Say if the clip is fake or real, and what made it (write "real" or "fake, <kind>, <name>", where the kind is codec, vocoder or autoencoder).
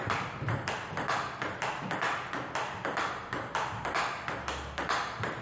fake, vocoder, BigVGAN v2